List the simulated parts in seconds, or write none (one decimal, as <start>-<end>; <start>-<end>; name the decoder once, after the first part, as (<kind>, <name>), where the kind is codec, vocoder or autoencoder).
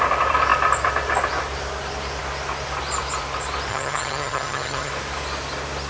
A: 3.7-4.9 (vocoder, HiFi-GAN)